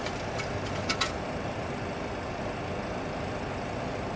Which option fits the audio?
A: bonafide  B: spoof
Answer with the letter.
A